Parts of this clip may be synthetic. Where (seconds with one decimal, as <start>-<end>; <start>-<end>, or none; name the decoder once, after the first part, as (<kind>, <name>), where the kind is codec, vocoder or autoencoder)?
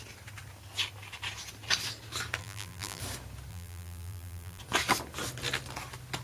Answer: 2.4-3.0 (vocoder, BigVGAN v2); 3.5-4.6